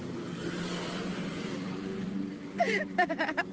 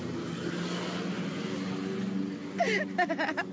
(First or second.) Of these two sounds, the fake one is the first